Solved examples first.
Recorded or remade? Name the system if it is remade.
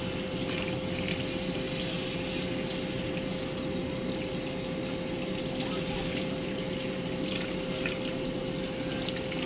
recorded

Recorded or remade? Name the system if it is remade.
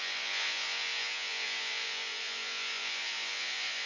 remade, vocoder, Vocos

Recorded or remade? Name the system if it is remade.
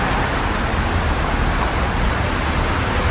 recorded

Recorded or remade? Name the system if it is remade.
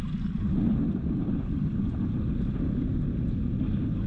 recorded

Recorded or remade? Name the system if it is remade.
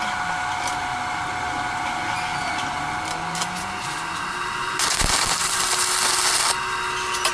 recorded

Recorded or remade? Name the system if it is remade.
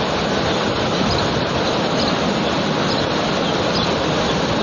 recorded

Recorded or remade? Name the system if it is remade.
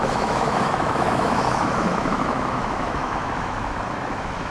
remade, autoencoder, DAC-VAE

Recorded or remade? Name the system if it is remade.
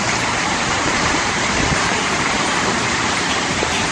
remade, vocoder, BigVGAN v2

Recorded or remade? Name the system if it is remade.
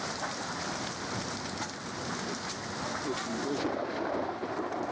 recorded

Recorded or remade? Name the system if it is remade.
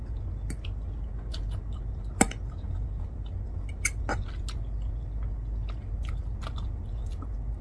recorded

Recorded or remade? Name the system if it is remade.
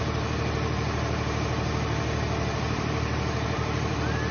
remade, vocoder, BigVGAN v2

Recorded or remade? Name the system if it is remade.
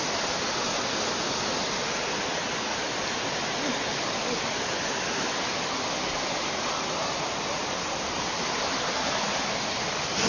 recorded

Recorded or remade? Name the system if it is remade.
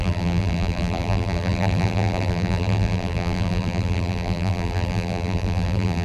remade, vocoder, BigVGAN v2